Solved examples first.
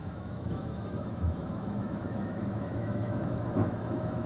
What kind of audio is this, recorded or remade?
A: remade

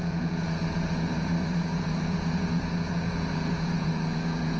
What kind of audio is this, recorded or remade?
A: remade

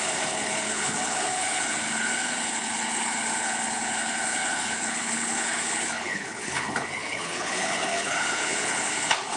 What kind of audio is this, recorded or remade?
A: remade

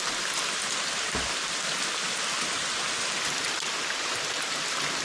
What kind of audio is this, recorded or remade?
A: recorded